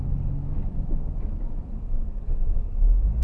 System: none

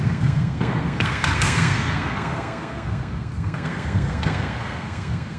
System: codec, SNAC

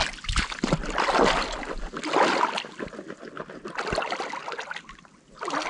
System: none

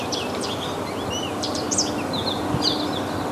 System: none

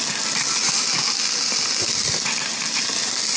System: none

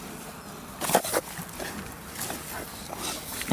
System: none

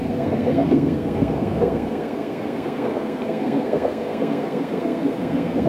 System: codec, SNAC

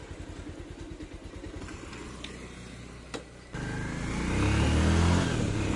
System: none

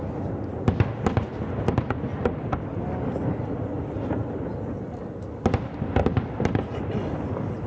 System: none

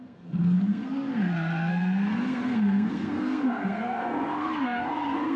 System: codec, SNAC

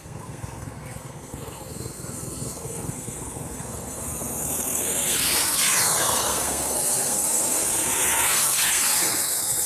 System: codec, SNAC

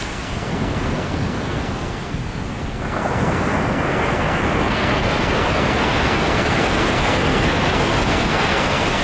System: codec, SNAC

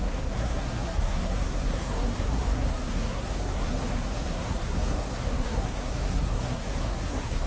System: codec, SNAC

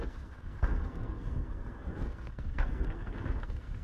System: codec, SNAC